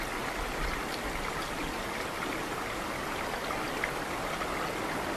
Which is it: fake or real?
real